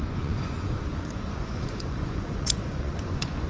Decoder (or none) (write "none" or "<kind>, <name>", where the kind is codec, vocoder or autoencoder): vocoder, Vocos